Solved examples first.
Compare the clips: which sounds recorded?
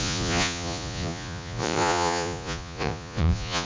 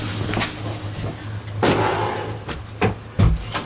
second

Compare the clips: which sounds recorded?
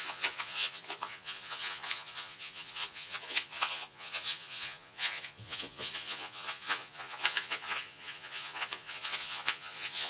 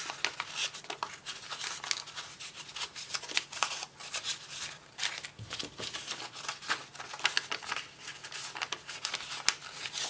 second